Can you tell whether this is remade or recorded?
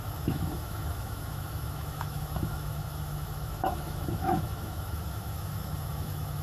remade